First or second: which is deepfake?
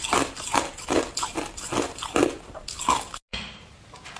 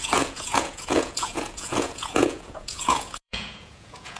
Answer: second